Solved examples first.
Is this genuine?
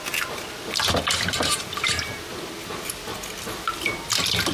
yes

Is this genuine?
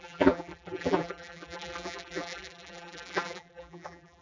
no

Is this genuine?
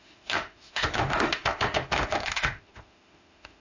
no